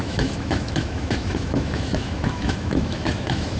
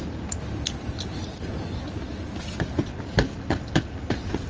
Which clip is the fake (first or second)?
first